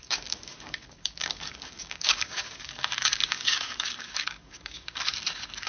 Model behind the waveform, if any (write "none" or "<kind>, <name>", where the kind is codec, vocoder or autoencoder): codec, DAC